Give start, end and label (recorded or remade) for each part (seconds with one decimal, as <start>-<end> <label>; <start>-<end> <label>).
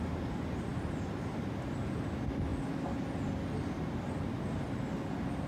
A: 0.0-5.5 recorded